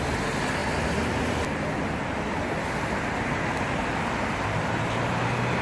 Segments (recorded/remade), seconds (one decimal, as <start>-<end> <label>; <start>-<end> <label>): 0.0-5.6 recorded

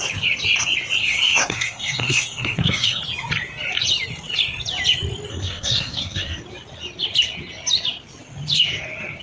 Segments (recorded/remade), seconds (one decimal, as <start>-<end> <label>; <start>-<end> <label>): 0.0-1.0 recorded; 1.0-3.0 remade; 3.0-5.3 recorded; 5.3-6.4 remade; 6.4-9.2 recorded